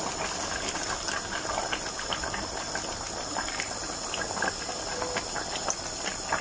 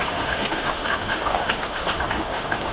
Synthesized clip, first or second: second